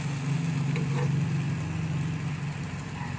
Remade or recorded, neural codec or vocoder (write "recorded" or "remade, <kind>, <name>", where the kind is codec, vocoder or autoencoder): recorded